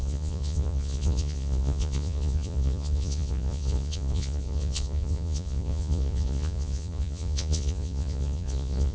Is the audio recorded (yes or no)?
no